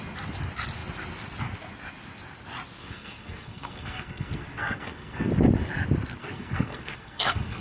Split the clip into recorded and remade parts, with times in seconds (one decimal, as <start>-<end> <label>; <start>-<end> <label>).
0.0-2.8 recorded; 2.8-5.3 remade; 5.3-6.2 recorded; 6.2-7.6 remade